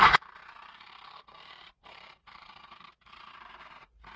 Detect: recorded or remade remade